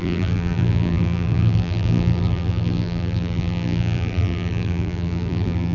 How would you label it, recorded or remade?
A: remade